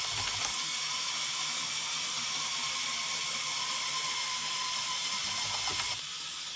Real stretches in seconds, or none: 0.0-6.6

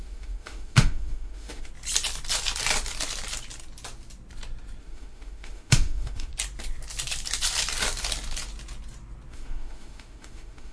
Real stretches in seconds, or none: 1.7-4.8; 6.3-9.3

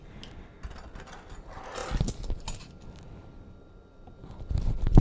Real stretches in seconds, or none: 0.0-5.0

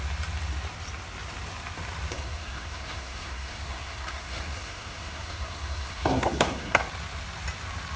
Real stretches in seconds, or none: 0.0-2.1; 6.8-8.0

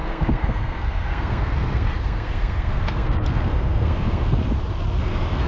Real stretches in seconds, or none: 4.4-5.0

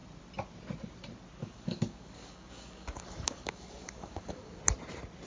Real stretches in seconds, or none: 0.0-1.4; 4.6-5.3